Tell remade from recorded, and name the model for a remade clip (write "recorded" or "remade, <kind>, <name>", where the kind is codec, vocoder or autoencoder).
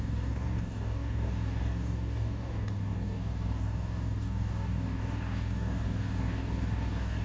remade, codec, DAC